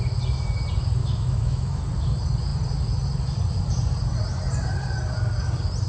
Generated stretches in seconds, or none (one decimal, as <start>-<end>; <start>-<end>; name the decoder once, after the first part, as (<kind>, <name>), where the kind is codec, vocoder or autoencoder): 1.0-1.8 (autoencoder, DAC-VAE)